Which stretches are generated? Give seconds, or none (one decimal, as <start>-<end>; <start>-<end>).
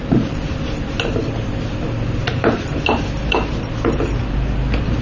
none